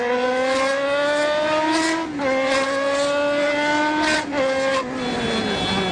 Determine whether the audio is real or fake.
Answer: real